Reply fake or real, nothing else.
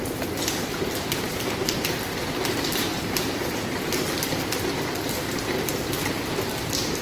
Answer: fake